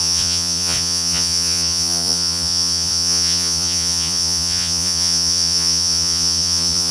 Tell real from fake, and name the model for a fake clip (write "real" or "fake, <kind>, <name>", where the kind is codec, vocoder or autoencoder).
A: fake, vocoder, Vocos